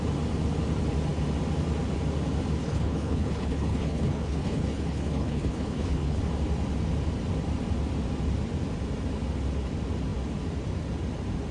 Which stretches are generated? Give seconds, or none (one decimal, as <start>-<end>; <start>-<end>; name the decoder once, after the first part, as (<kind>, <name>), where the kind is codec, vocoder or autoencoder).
2.6-6.2 (codec, HILCodec)